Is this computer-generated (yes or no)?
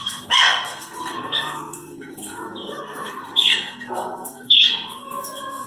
yes